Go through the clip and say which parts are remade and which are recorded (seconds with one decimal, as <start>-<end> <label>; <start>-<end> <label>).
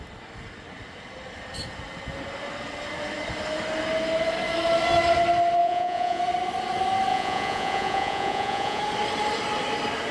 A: 0.0-5.6 recorded; 5.6-6.2 remade; 6.2-7.1 recorded; 7.1-8.8 remade; 8.8-10.1 recorded